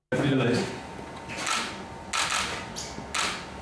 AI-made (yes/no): no